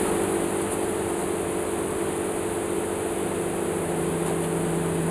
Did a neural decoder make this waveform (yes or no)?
no